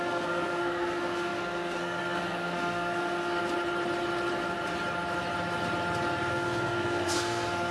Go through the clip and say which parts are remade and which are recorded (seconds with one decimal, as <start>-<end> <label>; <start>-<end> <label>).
0.0-3.4 remade; 3.4-6.3 recorded; 6.3-7.7 remade